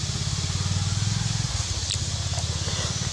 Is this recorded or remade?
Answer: recorded